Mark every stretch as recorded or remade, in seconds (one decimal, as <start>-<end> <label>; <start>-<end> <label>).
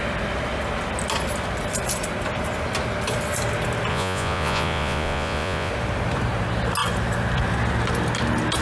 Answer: 0.0-3.9 recorded; 3.9-5.7 remade; 5.7-8.6 recorded